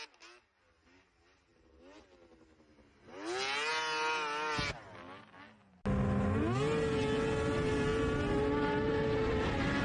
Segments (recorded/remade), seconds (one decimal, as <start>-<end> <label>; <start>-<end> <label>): 0.0-9.8 recorded